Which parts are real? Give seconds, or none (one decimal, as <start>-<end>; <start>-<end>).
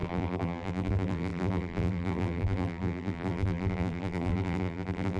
none